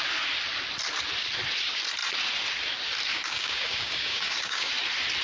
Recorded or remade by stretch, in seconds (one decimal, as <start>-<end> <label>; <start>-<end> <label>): 0.0-3.1 recorded; 3.1-4.7 remade; 4.7-5.2 recorded